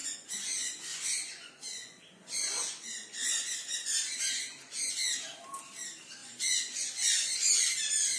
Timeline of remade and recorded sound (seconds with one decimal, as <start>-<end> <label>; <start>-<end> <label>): 0.0-4.9 remade; 4.9-6.2 recorded; 6.2-7.5 remade; 7.5-8.2 recorded